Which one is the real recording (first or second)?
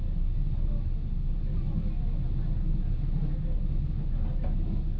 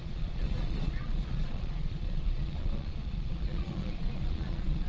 first